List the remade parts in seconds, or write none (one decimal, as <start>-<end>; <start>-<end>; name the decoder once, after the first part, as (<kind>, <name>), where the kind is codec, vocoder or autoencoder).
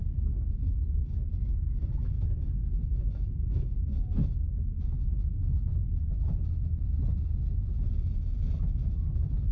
none